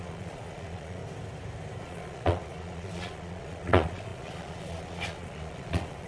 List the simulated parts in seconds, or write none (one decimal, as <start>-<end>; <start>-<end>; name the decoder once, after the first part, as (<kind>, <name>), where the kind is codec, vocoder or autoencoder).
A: 0.0-1.0 (vocoder, Vocos); 1.8-6.1

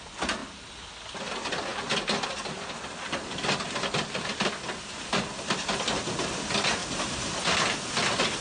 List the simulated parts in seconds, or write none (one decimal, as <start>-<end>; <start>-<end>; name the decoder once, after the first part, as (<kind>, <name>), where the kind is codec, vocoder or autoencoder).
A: none

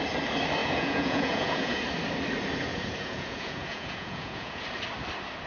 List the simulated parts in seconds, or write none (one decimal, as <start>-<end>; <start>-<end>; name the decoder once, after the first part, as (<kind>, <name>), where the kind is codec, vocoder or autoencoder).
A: 0.6-1.8 (vocoder, Vocos); 2.7-4.6